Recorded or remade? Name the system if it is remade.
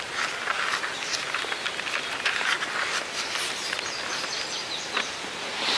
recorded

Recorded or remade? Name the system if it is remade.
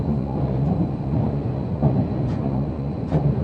remade, vocoder, Vocos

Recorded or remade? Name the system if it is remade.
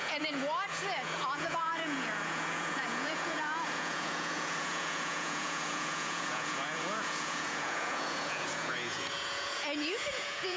remade, vocoder, Vocos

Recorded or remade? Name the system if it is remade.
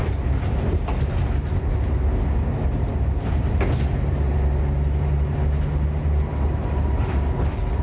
recorded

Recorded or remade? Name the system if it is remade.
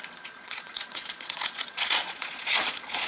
remade, vocoder, Vocos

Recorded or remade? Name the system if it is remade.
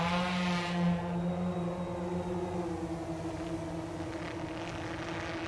recorded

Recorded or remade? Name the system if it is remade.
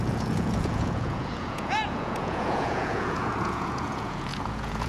remade, vocoder, Vocos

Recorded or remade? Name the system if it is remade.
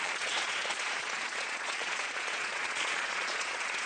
remade, vocoder, Vocos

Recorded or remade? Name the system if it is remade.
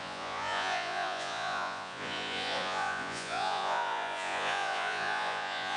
remade, vocoder, Vocos